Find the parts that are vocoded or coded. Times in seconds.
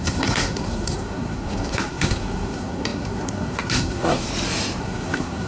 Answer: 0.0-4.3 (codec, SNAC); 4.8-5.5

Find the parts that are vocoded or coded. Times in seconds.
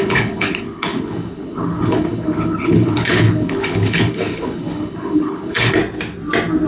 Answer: 0.0-5.8 (codec, HILCodec)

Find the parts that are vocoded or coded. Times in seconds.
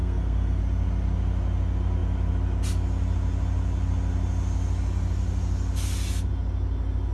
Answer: 0.0-0.6 (codec, SNAC)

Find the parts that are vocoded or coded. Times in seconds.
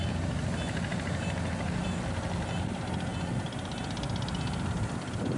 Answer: none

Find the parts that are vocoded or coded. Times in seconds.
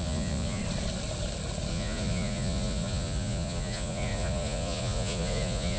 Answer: 0.0-0.6 (vocoder, Vocos); 1.7-5.8